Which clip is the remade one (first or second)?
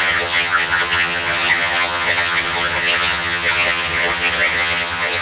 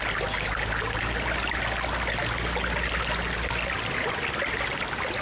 first